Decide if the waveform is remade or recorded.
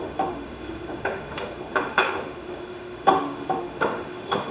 remade